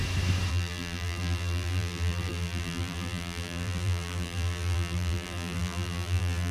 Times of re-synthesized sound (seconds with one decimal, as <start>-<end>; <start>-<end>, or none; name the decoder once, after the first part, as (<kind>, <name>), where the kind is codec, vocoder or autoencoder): 0.5-6.5 (vocoder, BigVGAN v2)